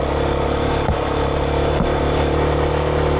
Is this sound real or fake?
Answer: real